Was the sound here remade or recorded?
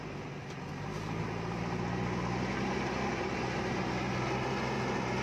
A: recorded